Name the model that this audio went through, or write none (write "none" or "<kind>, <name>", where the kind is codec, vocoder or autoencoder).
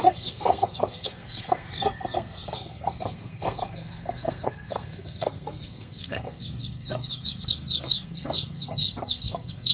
codec, SNAC